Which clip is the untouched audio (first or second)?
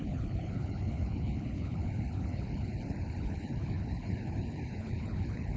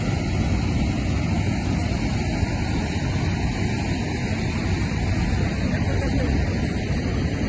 second